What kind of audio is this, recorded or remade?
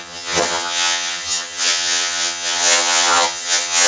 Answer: remade